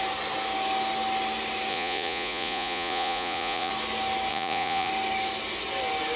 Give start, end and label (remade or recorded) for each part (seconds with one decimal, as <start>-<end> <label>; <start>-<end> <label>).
0.0-1.7 recorded; 1.7-3.7 remade; 3.7-4.3 recorded; 4.3-4.9 remade; 4.9-6.2 recorded